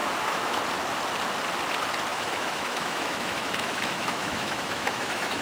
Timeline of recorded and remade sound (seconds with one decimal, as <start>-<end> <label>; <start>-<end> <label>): 0.0-0.6 remade; 0.6-2.1 recorded; 2.1-5.4 remade